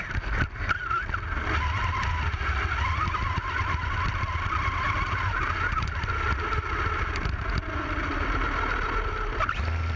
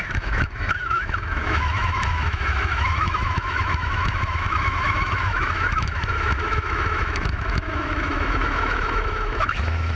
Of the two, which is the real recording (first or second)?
first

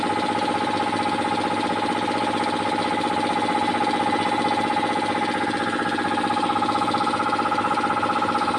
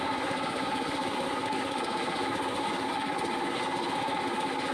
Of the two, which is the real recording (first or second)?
first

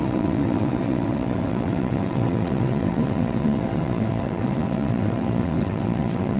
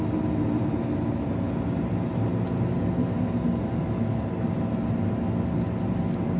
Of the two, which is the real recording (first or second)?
second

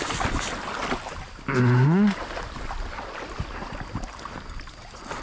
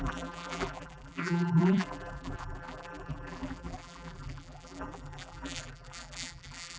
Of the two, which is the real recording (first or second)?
first